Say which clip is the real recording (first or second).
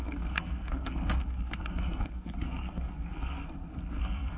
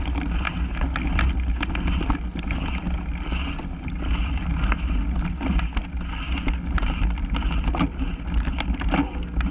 second